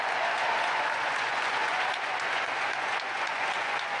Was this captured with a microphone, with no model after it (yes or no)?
no